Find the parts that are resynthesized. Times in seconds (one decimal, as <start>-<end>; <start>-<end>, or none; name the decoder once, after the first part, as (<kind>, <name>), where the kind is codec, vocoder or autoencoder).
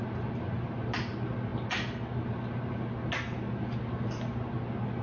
none